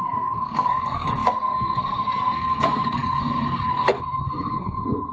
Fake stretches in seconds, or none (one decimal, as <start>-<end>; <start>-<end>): 0.0-5.1